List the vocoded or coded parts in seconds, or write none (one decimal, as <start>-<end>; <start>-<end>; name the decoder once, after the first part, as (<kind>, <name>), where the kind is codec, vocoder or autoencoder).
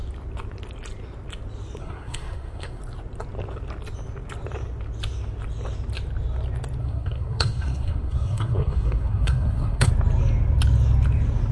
1.8-2.8 (codec, SNAC); 6.8-9.9